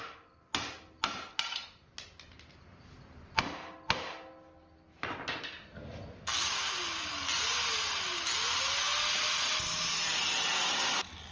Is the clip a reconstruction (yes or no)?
no